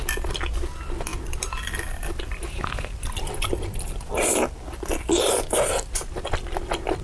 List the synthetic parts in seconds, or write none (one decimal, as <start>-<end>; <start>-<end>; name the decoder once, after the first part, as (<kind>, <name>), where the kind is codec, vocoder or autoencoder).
none